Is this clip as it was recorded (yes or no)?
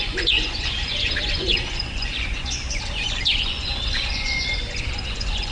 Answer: no